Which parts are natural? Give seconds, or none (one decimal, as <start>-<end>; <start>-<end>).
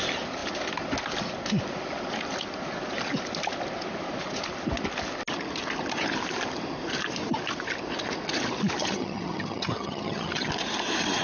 0.0-8.8; 10.5-11.2